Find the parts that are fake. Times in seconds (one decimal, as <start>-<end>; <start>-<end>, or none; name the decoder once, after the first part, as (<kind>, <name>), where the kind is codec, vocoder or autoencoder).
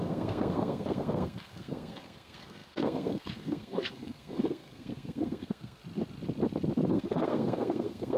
0.0-5.8 (codec, SNAC); 6.9-8.2